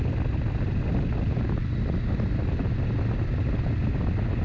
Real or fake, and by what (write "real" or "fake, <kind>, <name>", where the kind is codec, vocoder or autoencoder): real